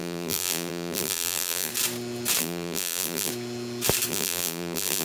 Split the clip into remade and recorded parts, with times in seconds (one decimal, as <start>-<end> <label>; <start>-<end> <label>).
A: 0.0-1.7 remade; 1.7-2.4 recorded; 2.4-3.3 remade; 3.3-4.1 recorded; 4.1-5.0 remade